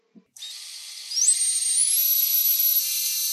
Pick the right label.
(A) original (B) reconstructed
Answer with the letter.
A